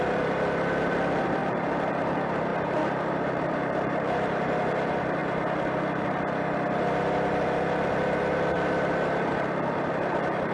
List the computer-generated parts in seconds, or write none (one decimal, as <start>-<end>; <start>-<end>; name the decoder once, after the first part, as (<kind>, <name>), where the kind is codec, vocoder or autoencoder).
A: 0.0-2.5 (vocoder, BigVGAN v2); 3.4-10.5